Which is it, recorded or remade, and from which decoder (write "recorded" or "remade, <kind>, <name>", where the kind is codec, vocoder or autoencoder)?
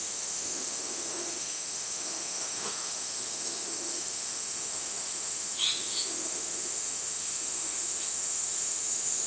remade, autoencoder, DAC-VAE